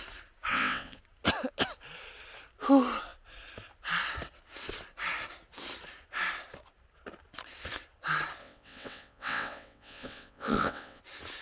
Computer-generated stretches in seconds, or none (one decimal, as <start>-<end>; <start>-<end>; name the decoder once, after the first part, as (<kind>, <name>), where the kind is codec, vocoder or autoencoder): 0.5-1.0 (vocoder, WaveNeXt); 8.4-11.0